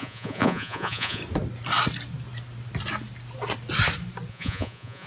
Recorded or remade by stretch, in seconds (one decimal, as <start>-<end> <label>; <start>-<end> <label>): 0.0-1.2 remade; 1.2-4.3 recorded; 4.3-5.1 remade